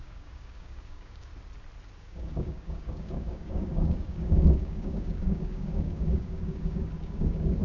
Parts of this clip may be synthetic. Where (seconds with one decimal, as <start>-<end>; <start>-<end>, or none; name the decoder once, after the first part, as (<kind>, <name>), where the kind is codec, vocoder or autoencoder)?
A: 0.0-1.3 (codec, DAC); 2.0-7.6